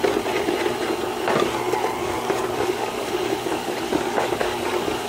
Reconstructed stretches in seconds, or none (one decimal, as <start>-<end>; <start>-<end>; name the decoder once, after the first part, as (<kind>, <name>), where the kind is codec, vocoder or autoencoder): 2.0-5.1 (codec, DAC)